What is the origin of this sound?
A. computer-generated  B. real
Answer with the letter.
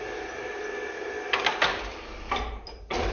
B